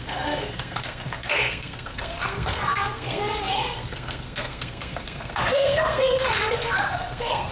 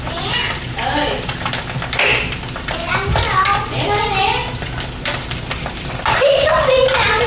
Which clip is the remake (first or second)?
first